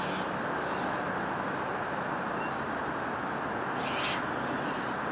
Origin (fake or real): real